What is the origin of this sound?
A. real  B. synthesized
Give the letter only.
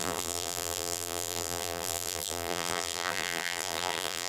B